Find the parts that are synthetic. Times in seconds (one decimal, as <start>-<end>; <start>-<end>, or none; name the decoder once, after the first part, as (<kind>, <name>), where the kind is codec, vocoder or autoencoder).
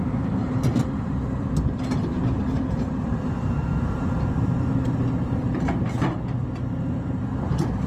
0.0-7.9 (vocoder, BigVGAN v2)